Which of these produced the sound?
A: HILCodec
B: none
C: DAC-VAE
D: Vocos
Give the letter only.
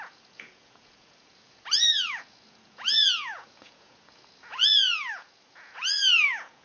D